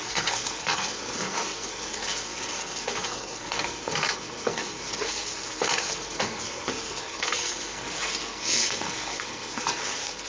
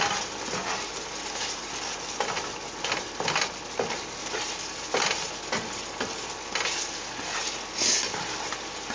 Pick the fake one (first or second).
first